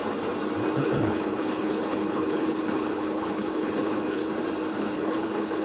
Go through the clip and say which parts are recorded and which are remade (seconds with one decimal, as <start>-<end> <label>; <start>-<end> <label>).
0.0-0.8 recorded; 0.8-4.2 remade; 4.2-4.7 recorded; 4.7-5.6 remade